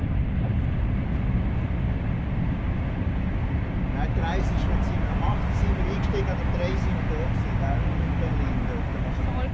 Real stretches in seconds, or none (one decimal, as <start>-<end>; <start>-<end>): 0.0-9.5